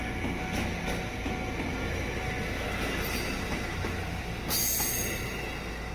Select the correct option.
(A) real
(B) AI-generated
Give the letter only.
A